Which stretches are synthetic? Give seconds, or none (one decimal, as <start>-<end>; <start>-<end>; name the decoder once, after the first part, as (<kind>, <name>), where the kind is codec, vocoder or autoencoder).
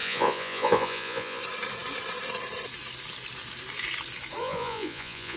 0.0-1.4 (vocoder, Vocos); 4.4-5.4